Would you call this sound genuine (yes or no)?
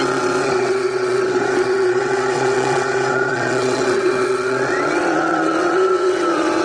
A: no